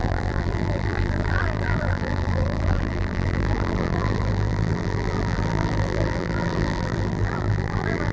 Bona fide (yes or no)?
no